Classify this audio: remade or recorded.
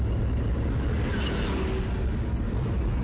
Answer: recorded